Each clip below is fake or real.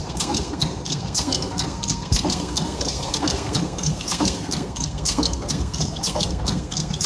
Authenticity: fake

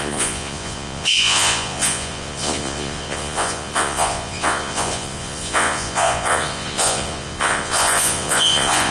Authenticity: fake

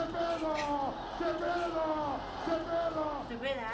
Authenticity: real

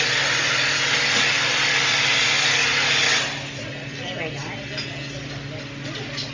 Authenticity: real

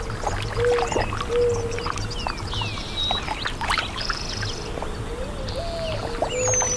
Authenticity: real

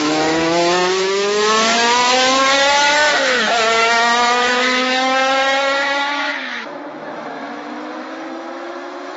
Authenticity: fake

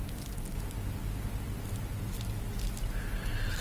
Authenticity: real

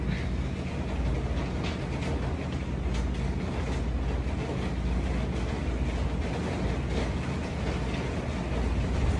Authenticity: real